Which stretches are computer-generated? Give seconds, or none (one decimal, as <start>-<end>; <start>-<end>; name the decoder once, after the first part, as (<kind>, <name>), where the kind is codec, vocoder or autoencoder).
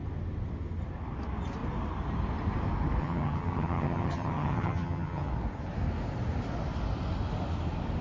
3.0-5.3 (vocoder, HiFi-GAN)